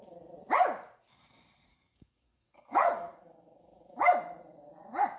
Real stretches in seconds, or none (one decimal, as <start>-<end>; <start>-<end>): 0.0-1.7; 4.0-5.2